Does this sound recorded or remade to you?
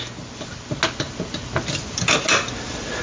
recorded